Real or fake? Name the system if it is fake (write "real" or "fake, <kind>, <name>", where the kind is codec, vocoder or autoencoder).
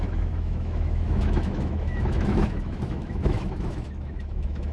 fake, autoencoder, DAC-VAE